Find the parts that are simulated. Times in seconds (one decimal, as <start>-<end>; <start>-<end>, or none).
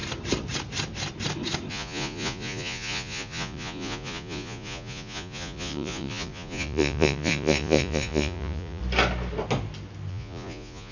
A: 1.7-8.8; 10.1-10.9